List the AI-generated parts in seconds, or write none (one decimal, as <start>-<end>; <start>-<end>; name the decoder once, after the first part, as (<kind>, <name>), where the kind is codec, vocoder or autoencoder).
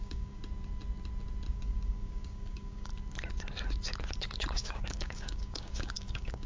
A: 0.0-0.4 (codec, DAC); 1.5-2.9; 4.5-6.5